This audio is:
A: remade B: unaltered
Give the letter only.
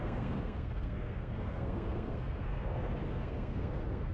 A